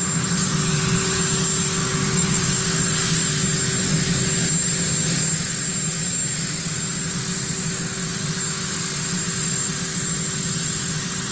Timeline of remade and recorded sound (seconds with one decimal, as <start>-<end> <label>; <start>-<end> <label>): 0.0-1.8 recorded; 1.8-2.5 remade; 2.5-11.3 recorded